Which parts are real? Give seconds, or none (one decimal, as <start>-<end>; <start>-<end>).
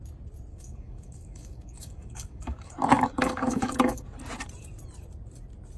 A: 0.0-0.5; 4.0-5.8